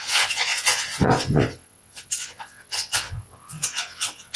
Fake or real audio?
fake